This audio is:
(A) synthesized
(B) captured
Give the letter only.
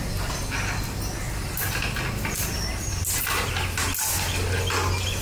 B